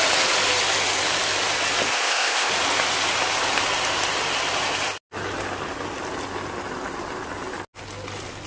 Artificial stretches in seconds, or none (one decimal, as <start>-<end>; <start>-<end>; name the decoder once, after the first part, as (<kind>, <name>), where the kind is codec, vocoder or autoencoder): 1.9-2.5 (codec, ZipCodec)